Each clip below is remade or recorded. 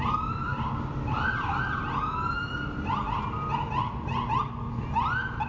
recorded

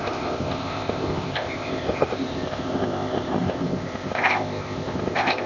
remade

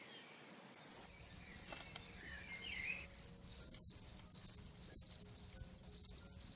recorded